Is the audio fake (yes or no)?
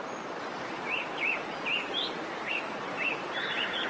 no